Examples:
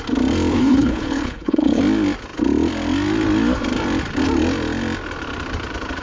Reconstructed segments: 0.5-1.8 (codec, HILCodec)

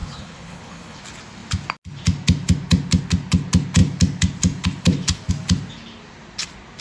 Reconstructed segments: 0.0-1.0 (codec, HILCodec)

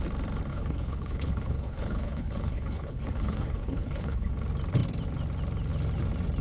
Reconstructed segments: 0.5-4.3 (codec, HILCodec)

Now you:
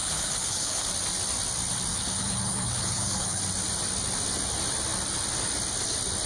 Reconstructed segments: 0.0-0.8 (codec, HILCodec); 1.9-3.4